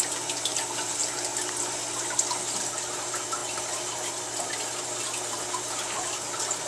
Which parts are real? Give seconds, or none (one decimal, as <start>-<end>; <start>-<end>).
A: 0.0-6.7